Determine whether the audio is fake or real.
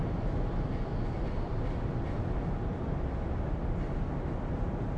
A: real